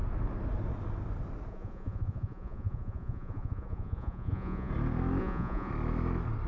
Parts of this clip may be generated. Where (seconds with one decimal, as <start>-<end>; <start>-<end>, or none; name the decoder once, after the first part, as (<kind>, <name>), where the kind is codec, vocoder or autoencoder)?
1.5-4.7 (vocoder, Vocos); 5.2-5.7